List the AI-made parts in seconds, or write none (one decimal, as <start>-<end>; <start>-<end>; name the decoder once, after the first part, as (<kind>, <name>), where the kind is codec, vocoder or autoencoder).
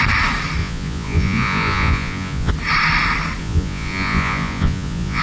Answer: 0.6-2.5 (vocoder, Vocos); 3.4-5.2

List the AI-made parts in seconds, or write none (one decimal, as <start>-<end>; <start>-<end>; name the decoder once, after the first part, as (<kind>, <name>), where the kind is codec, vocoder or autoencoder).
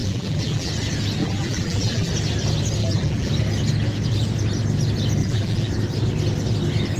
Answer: 0.0-0.7 (vocoder, BigVGAN v2); 1.2-2.1; 2.8-3.3; 5.2-5.7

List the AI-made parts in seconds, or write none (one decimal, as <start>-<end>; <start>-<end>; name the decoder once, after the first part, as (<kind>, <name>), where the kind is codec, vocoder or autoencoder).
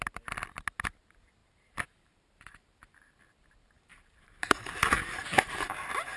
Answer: 1.4-3.2 (vocoder, BigVGAN v2); 3.9-6.2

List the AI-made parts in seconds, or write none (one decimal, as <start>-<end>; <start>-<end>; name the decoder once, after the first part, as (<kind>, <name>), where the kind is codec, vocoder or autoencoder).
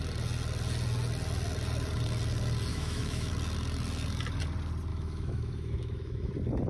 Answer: 2.7-3.3 (autoencoder, DAC-VAE); 4.9-6.3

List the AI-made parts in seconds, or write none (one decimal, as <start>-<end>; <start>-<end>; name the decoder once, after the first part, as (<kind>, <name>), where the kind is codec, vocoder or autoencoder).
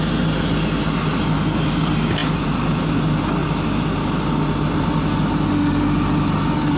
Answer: none